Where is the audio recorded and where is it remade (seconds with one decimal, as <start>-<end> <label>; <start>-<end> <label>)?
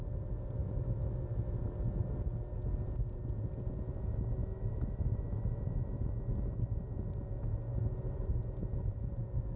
0.0-0.6 recorded; 0.6-1.6 remade; 1.6-4.4 recorded; 4.4-6.2 remade; 6.2-9.6 recorded